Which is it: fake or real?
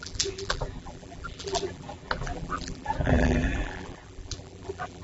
fake